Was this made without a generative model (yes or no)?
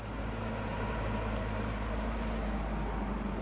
yes